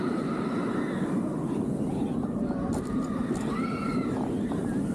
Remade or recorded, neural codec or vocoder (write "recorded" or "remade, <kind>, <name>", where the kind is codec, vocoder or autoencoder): recorded